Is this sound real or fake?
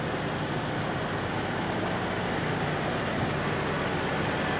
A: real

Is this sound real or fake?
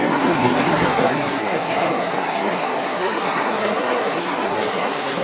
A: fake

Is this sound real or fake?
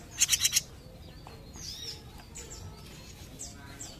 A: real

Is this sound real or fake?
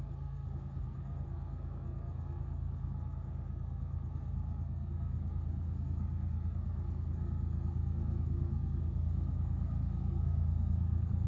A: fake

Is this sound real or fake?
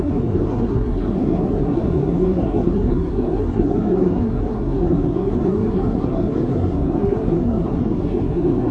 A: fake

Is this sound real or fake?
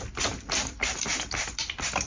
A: real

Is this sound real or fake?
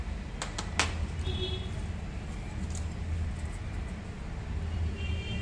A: real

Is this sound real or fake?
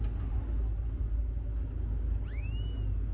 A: real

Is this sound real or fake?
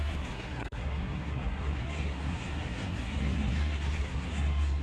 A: fake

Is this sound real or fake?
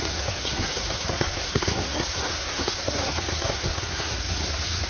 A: fake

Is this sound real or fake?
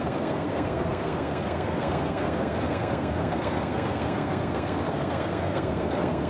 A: fake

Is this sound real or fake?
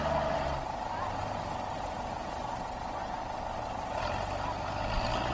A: real